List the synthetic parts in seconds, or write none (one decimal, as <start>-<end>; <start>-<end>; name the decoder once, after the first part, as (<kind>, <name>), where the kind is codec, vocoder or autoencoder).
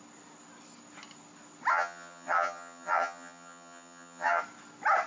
1.7-4.4 (vocoder, HiFi-GAN)